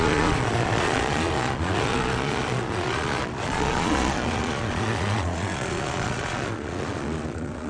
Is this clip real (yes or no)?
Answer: no